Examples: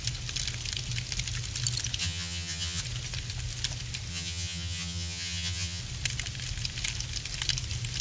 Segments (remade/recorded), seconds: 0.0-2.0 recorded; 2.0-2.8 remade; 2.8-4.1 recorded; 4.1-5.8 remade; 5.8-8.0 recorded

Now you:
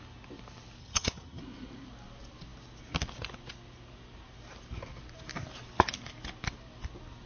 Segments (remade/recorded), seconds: 0.0-0.8 recorded; 0.8-1.4 remade; 1.4-7.3 recorded

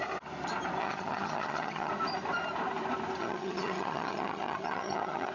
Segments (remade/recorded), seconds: 0.0-0.8 recorded; 0.8-1.9 remade; 1.9-3.2 recorded; 3.2-5.3 remade